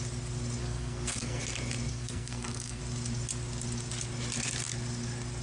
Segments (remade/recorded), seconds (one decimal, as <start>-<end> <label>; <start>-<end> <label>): 0.0-0.6 recorded; 0.6-1.4 remade; 1.4-1.9 recorded; 1.9-2.8 remade; 2.8-5.4 recorded